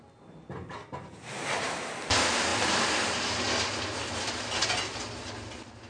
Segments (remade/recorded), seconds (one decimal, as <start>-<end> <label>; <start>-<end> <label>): 0.0-5.9 recorded